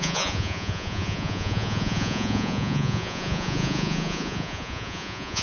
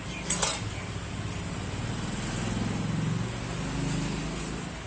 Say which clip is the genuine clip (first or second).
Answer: second